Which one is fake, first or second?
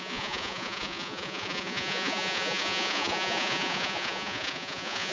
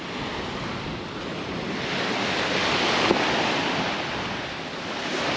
first